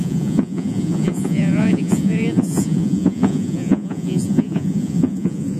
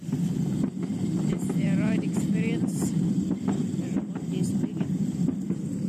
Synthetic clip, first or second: first